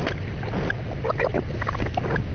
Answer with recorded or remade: recorded